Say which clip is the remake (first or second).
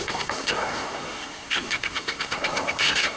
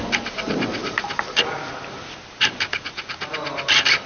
first